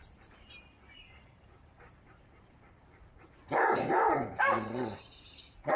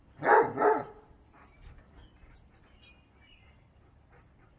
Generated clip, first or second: first